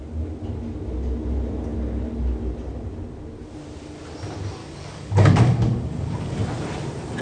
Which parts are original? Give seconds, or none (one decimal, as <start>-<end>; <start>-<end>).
0.0-4.6; 6.4-7.2